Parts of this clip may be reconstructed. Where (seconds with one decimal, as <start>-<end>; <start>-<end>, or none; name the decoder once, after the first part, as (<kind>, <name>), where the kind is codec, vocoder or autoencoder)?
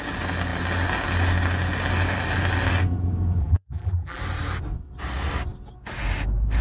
3.4-4.2 (vocoder, BigVGAN v2)